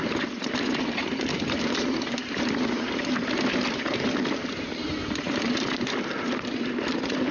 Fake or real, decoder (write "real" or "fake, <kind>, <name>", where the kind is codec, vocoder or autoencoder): real